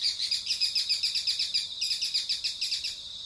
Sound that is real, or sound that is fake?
real